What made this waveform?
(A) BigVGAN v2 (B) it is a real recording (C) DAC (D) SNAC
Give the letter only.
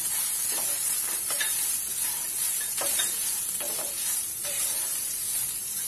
A